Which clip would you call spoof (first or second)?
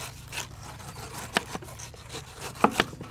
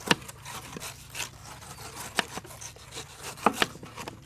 first